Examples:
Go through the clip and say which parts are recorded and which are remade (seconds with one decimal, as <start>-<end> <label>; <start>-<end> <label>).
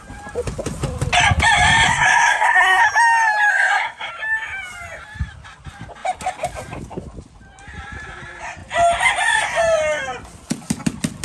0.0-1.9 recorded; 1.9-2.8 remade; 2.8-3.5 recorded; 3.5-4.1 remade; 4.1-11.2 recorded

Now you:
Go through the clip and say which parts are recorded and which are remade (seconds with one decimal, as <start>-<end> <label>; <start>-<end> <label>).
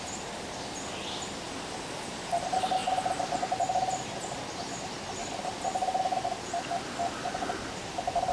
0.0-8.3 recorded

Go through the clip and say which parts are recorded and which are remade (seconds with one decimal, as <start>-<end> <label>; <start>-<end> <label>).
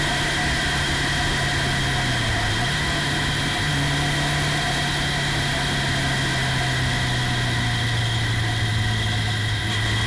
0.0-10.1 recorded